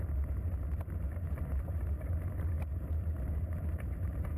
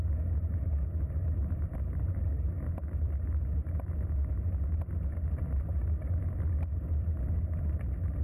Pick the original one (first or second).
second